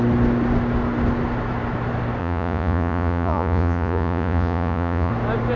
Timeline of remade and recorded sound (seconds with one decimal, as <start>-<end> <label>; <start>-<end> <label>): 0.0-2.2 recorded; 2.2-5.1 remade; 5.1-5.6 recorded